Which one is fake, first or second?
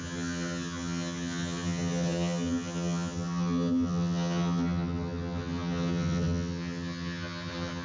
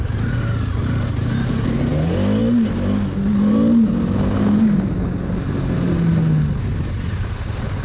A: first